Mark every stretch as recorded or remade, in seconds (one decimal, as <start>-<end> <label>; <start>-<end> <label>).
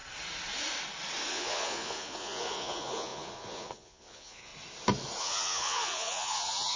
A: 0.0-1.3 recorded; 1.3-4.5 remade; 4.5-5.2 recorded; 5.2-6.8 remade